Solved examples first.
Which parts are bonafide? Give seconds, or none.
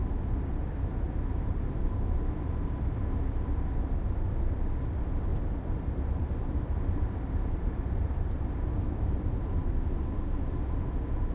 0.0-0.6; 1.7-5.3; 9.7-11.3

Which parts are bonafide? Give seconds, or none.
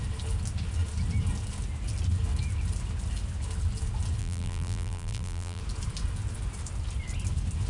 0.0-4.2; 5.6-7.7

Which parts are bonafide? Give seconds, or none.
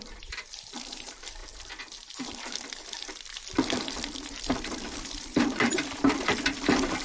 1.4-3.6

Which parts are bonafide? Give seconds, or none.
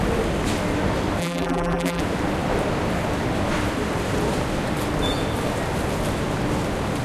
0.0-1.2; 2.0-7.0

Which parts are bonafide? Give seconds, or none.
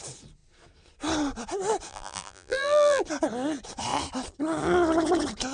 0.0-1.9; 3.0-5.5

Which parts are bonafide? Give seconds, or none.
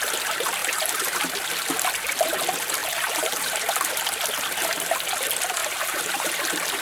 0.0-0.6; 1.2-2.8; 3.6-5.6